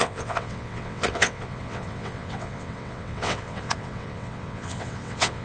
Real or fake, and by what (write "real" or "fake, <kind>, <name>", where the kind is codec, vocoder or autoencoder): fake, vocoder, WaveNeXt